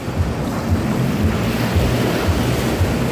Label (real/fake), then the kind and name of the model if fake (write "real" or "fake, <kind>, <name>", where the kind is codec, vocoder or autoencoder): real